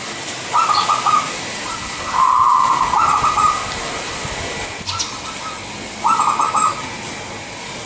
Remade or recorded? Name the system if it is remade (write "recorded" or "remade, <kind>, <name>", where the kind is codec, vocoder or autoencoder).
recorded